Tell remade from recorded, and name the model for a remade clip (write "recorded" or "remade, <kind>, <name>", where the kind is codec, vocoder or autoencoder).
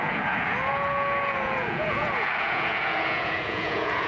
remade, vocoder, Vocos